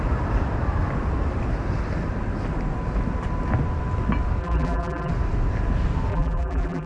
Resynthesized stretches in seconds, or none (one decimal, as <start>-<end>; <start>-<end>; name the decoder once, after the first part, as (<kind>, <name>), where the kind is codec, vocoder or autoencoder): 4.4-5.1 (vocoder, BigVGAN v2); 6.1-6.9